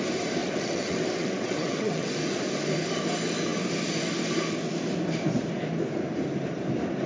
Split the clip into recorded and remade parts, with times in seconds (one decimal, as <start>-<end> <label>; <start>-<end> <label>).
0.0-0.4 recorded; 0.4-2.1 remade; 2.1-7.1 recorded